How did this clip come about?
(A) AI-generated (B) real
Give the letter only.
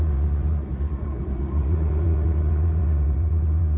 A